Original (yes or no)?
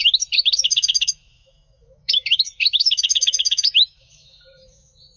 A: no